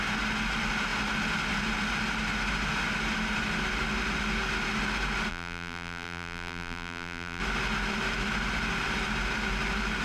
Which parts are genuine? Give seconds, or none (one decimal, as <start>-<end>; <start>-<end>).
0.0-5.3; 7.4-10.0